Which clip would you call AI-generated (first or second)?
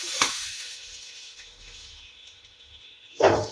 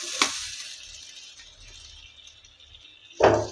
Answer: first